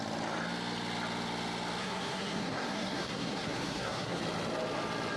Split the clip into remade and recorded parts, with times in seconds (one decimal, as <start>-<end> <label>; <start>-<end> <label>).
0.0-1.8 recorded; 1.8-4.2 remade; 4.2-5.2 recorded